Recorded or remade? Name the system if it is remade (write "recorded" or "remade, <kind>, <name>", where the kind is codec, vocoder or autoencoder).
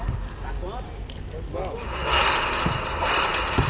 recorded